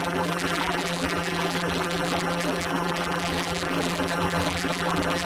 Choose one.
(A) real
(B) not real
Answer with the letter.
B